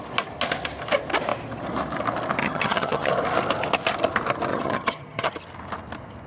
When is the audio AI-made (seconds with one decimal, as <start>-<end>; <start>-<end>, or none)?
2.4-3.1; 4.5-5.3